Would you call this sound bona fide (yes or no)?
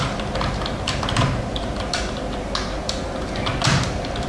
yes